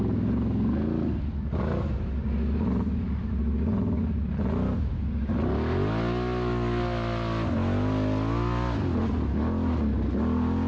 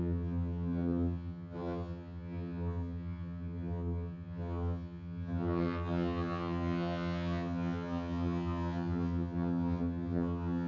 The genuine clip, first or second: first